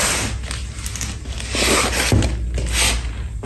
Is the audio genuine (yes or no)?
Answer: yes